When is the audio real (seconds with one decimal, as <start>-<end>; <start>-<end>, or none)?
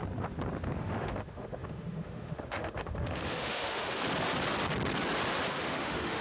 0.0-0.8; 4.0-5.5